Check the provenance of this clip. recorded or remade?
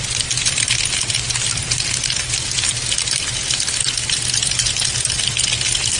recorded